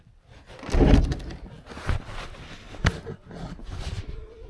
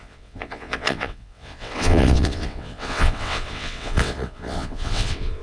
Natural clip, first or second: first